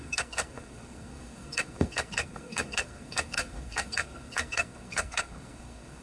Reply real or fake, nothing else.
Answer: fake